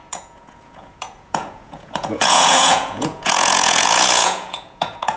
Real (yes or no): no